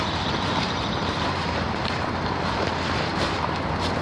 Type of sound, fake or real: fake